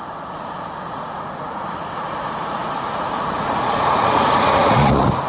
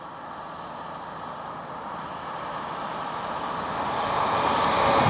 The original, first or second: second